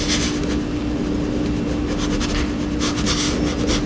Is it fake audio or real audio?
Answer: real